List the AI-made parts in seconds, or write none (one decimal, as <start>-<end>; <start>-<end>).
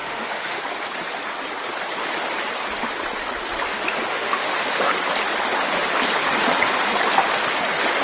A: 0.0-0.6; 4.1-4.9